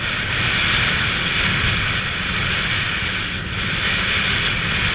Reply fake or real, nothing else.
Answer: real